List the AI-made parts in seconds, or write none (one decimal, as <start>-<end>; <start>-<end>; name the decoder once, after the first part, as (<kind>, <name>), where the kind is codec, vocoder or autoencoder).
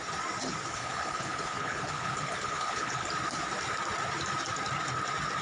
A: 0.7-3.1 (codec, HILCodec)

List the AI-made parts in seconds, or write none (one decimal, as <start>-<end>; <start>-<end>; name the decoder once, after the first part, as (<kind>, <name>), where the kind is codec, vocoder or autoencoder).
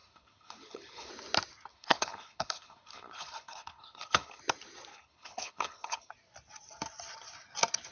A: 0.0-1.1 (codec, HILCodec); 1.7-4.4; 4.9-6.1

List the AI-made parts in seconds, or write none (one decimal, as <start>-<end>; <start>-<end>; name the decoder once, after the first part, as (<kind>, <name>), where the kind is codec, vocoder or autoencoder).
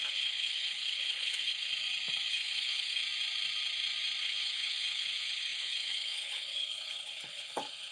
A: 0.0-1.7 (codec, HILCodec); 2.3-3.0; 4.2-7.9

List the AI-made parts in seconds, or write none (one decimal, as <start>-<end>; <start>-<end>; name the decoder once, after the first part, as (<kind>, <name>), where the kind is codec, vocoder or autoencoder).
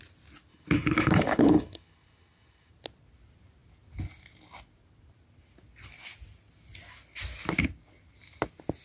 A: 0.5-2.7 (codec, HILCodec)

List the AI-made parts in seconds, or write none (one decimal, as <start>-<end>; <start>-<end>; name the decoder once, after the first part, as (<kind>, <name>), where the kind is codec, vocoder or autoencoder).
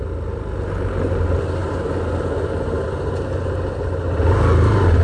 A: none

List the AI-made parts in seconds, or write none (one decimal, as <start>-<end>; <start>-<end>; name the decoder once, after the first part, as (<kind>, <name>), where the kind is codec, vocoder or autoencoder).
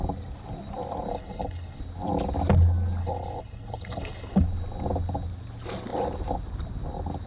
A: 1.1-1.8 (codec, HILCodec); 3.0-4.4